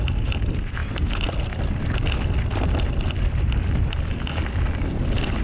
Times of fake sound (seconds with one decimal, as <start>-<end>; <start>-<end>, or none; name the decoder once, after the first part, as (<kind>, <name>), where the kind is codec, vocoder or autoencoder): none